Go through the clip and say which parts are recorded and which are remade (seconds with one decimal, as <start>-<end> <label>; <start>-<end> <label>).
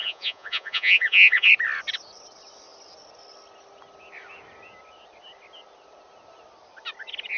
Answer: 0.0-1.5 remade; 1.5-7.4 recorded